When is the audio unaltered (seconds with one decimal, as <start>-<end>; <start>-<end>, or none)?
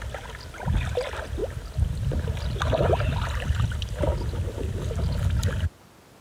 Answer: 0.0-6.2